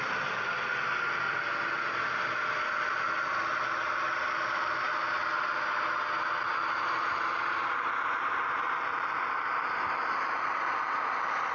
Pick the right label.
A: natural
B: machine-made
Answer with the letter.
A